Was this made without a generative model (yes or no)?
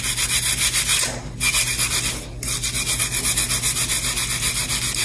yes